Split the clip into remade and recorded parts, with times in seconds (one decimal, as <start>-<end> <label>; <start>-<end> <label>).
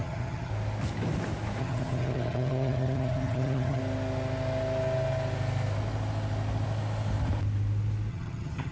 0.0-0.5 remade; 0.5-1.6 recorded; 1.6-3.8 remade; 3.8-8.1 recorded; 8.1-8.7 remade